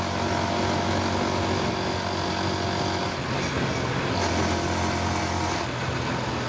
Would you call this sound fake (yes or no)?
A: no